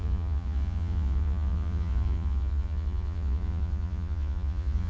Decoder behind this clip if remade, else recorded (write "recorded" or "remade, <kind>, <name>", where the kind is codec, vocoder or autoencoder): remade, vocoder, Vocos